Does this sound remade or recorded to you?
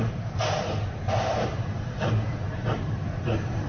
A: remade